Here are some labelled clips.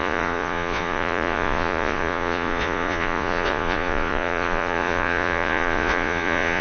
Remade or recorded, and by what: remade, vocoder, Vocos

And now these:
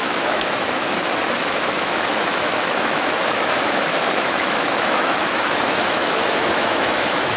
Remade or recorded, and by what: remade, autoencoder, DAC-VAE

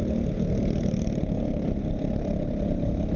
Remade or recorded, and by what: remade, vocoder, BigVGAN v2